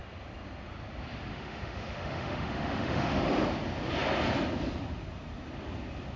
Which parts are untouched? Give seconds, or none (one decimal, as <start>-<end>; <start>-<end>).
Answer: 0.0-1.3; 3.2-6.2